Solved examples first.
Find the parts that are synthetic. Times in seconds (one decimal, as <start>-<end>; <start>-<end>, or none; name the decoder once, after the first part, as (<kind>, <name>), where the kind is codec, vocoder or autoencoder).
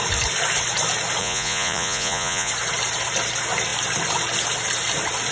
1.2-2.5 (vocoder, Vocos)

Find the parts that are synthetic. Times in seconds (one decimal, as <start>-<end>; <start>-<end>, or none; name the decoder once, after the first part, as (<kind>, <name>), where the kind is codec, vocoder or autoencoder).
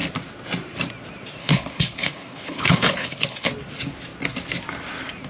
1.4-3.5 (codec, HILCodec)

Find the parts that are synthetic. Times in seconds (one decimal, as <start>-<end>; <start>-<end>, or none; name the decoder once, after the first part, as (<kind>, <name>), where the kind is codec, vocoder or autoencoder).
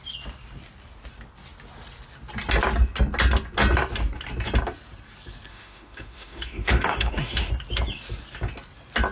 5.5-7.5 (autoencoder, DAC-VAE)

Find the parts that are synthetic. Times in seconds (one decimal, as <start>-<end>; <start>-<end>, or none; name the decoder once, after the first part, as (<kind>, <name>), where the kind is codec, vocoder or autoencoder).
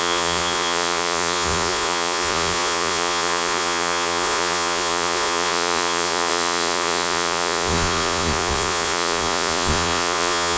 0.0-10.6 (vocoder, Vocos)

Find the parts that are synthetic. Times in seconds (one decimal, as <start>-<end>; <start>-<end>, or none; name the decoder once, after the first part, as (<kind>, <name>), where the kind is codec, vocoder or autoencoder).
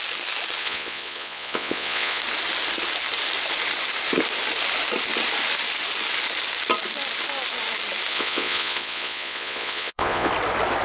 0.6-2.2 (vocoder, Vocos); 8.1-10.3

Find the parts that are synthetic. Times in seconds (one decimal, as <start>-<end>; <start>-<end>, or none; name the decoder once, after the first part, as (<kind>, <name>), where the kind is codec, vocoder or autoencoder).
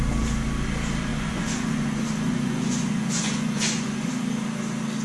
1.1-4.1 (vocoder, Vocos)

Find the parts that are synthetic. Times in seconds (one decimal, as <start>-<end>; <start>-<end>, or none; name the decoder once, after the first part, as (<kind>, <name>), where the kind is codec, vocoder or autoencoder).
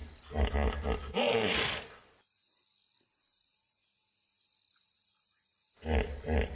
none